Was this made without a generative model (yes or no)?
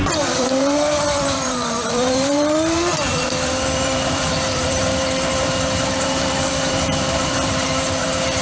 no